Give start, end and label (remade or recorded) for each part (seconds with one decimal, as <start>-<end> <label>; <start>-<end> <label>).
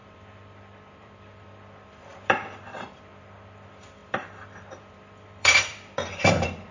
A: 0.0-6.7 remade